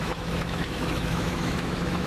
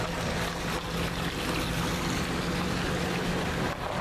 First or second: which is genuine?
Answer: second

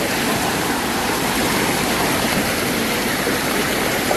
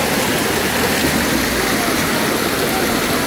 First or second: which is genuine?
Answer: second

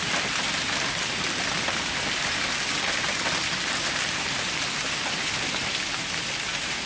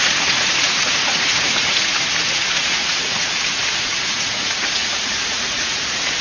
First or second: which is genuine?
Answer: first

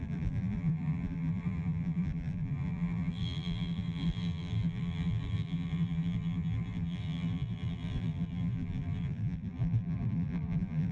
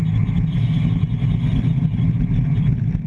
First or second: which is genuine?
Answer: second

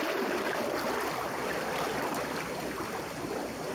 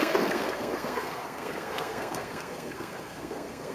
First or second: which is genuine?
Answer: first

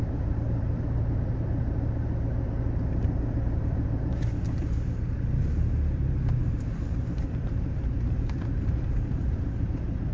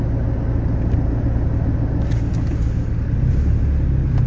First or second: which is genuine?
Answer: second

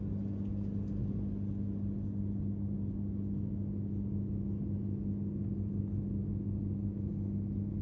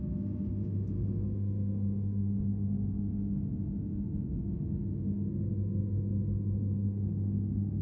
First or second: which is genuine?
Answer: first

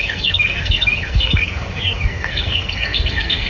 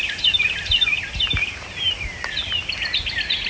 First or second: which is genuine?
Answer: second